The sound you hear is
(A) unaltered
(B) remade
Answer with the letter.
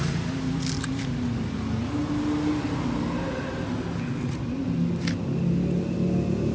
A